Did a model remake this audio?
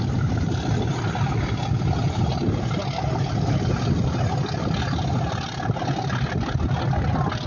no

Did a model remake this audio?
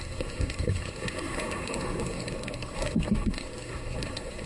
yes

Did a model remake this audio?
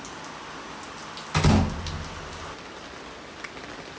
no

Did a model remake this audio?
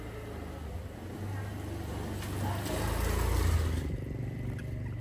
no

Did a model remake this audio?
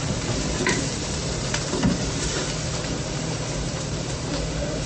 yes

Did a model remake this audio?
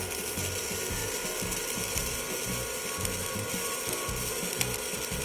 no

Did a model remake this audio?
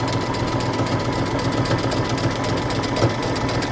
no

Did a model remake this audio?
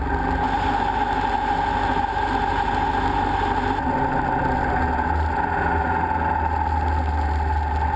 no